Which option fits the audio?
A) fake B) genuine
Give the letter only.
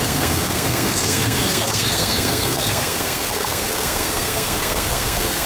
A